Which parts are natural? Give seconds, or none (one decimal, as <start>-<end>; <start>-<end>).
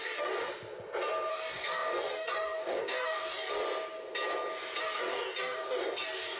0.5-1.3; 3.6-4.8